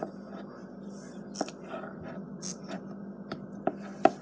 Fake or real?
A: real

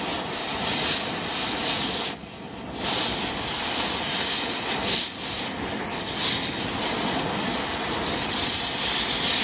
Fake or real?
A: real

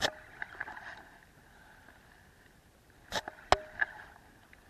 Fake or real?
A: real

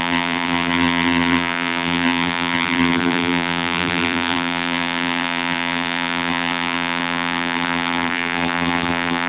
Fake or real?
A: fake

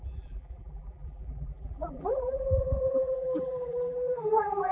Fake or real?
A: fake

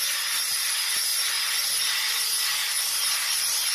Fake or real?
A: fake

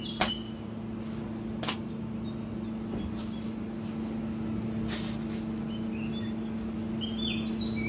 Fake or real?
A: real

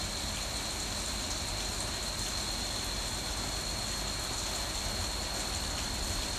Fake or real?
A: real